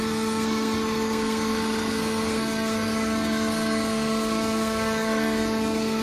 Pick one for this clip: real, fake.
fake